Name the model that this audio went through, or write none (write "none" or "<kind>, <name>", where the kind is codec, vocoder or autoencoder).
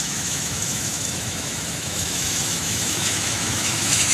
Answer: autoencoder, DAC-VAE